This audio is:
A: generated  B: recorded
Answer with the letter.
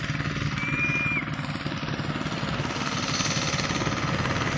B